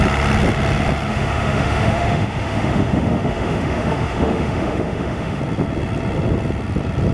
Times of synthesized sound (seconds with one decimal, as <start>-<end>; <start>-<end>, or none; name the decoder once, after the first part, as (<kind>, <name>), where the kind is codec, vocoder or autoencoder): 1.1-5.4 (autoencoder, DAC-VAE)